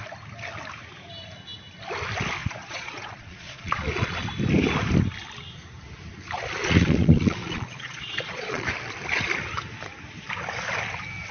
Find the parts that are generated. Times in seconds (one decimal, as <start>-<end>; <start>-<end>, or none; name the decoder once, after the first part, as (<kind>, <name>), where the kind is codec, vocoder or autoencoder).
2.4-4.3 (vocoder, Vocos); 6.6-8.7